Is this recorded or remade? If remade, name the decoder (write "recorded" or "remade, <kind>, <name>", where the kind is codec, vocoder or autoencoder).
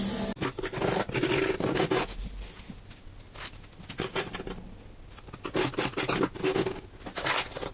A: recorded